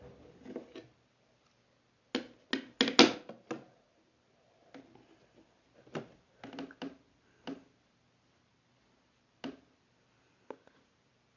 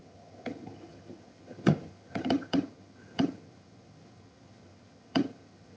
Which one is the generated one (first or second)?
second